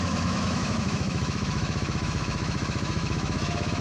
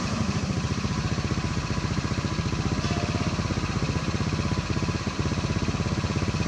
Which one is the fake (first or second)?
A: first